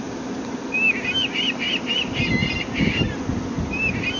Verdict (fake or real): real